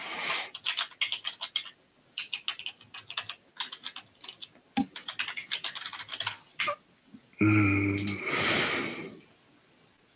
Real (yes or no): yes